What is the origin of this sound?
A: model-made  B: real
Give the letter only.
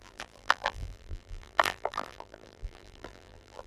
A